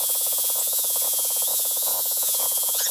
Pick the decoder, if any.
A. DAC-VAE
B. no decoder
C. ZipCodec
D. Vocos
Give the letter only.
D